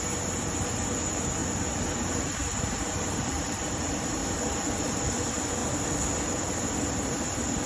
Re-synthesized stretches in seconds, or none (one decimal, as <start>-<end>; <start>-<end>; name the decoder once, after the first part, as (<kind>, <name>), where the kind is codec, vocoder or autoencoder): 0.0-1.4 (vocoder, BigVGAN v2); 2.0-4.2; 4.9-5.6; 6.4-7.7